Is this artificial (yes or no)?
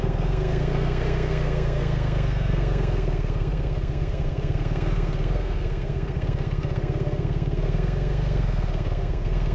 yes